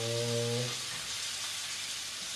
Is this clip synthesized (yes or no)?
no